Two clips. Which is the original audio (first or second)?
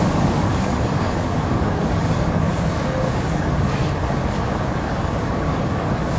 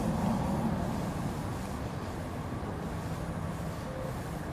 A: second